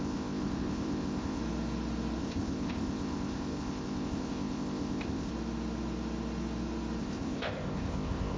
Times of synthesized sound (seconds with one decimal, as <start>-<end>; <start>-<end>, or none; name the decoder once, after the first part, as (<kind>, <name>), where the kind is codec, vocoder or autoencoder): 0.0-1.4 (codec, ZipCodec); 2.2-5.3; 7.0-8.4